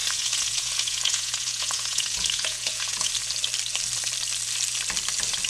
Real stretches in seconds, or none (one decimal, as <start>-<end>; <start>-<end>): 3.1-5.5